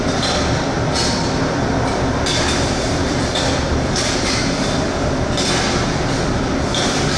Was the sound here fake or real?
fake